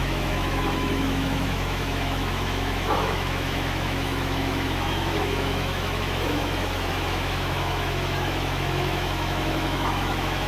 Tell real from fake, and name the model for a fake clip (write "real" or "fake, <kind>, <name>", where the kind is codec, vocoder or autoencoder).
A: fake, autoencoder, DAC-VAE